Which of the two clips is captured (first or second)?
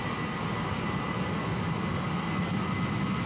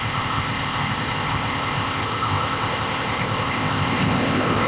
first